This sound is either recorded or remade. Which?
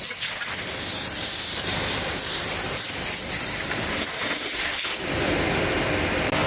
remade